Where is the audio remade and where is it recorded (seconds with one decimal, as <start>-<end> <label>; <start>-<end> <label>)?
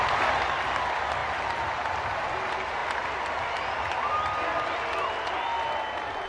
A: 0.0-6.3 recorded